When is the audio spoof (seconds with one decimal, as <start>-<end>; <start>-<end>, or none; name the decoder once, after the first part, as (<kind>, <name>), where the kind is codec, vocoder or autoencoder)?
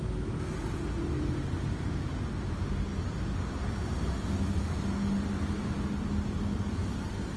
none